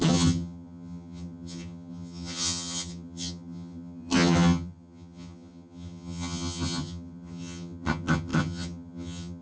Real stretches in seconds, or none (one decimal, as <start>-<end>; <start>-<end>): none